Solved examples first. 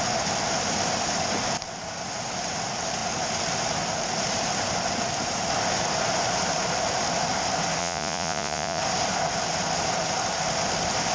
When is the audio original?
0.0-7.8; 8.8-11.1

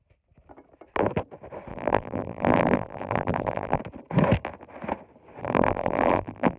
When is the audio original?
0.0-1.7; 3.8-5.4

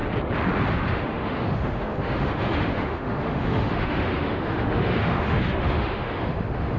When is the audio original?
0.0-0.7

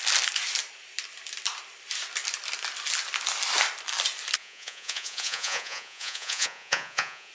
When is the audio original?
0.0-4.4